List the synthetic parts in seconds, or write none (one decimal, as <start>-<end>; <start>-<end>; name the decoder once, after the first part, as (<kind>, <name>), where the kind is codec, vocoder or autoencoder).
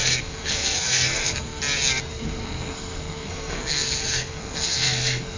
0.0-1.6 (codec, SNAC); 2.1-5.4